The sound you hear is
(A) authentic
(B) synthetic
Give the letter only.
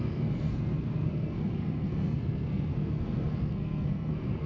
B